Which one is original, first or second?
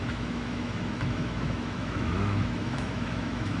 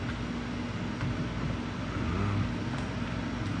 second